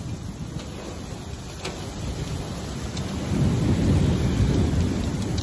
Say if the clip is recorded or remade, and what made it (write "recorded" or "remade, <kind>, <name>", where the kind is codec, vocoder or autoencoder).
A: recorded